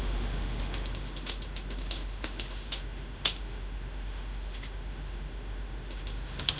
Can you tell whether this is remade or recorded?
remade